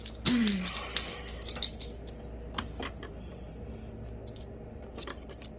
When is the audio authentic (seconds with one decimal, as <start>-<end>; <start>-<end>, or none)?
0.0-5.6